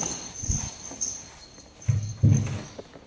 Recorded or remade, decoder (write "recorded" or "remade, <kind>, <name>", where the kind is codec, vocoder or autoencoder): recorded